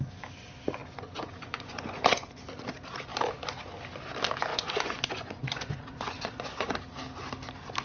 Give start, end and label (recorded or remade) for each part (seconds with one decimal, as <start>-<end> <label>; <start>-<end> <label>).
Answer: 0.0-0.8 recorded; 0.8-2.4 remade; 2.4-4.5 recorded; 4.5-6.8 remade; 6.8-7.8 recorded